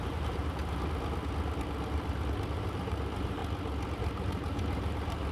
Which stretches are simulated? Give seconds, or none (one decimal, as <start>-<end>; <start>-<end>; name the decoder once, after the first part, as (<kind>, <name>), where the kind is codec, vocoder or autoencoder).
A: 0.0-0.6 (vocoder, BigVGAN v2); 2.5-3.4; 4.0-5.3